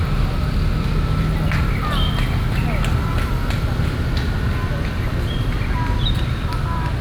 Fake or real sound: real